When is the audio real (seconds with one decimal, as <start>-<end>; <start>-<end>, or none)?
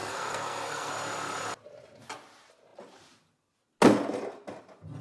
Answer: 0.9-5.0